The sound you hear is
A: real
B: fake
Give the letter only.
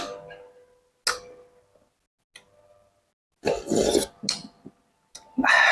A